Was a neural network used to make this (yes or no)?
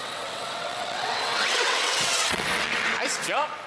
yes